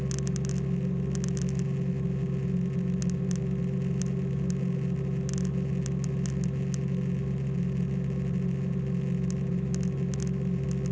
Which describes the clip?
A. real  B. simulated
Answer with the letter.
A